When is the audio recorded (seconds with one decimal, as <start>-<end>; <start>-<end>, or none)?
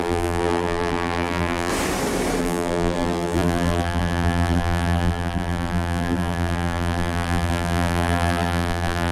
1.7-2.4